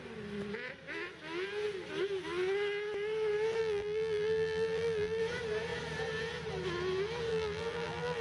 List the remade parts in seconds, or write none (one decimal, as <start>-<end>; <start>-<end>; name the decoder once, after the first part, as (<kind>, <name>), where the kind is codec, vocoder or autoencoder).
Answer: 3.6-5.2 (vocoder, BigVGAN v2); 7.3-8.2